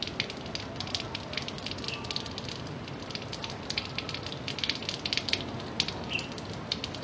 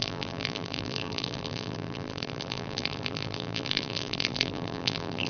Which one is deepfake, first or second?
second